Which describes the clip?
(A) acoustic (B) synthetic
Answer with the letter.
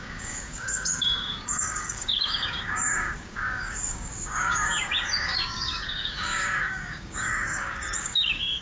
B